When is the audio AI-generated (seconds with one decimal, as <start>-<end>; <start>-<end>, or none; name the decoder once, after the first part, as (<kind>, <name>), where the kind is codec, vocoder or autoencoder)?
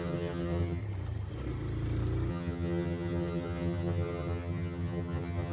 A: 0.0-0.8 (vocoder, HiFi-GAN); 2.3-5.5